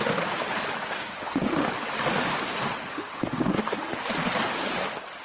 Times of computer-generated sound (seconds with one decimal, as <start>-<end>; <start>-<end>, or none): 1.0-1.7; 2.9-3.9